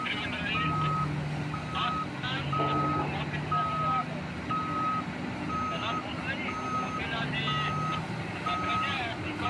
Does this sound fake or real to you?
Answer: real